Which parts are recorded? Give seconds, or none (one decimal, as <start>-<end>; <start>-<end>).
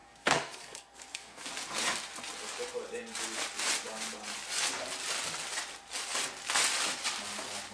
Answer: 1.5-7.7